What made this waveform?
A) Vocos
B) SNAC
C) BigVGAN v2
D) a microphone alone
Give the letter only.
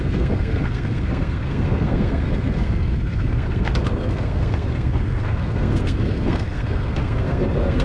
B